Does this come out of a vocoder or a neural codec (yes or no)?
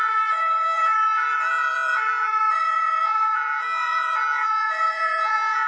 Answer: yes